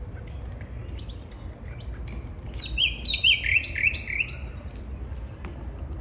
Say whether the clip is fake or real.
real